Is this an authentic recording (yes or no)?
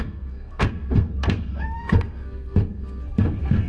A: no